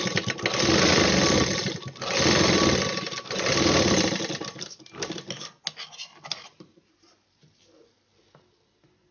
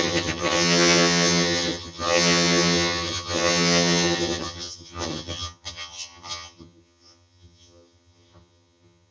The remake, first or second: second